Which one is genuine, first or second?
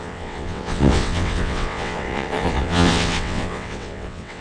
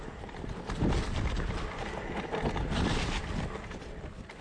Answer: second